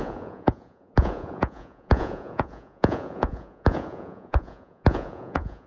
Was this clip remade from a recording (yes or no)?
yes